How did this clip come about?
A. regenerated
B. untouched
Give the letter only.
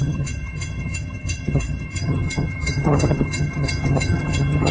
A